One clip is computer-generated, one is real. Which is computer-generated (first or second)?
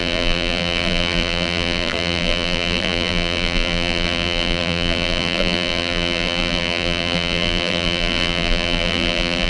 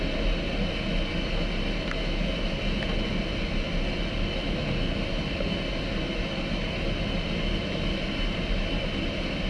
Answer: first